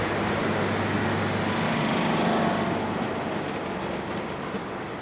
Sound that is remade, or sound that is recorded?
recorded